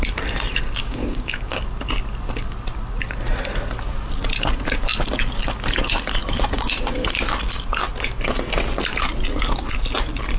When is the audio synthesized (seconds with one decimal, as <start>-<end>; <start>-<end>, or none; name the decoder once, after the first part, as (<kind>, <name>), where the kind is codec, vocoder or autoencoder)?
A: 0.8-1.6 (codec, DAC)